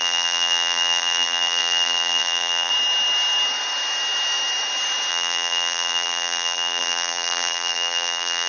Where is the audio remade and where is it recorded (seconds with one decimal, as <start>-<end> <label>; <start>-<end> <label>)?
0.0-2.7 remade; 2.7-5.1 recorded; 5.1-8.5 remade